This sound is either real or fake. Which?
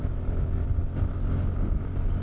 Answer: real